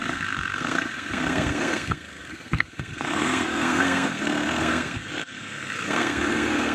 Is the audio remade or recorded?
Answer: remade